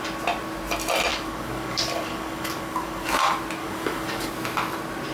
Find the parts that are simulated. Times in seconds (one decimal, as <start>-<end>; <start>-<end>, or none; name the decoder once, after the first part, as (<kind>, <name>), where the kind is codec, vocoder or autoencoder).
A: 1.1-3.1 (codec, DAC); 3.6-4.3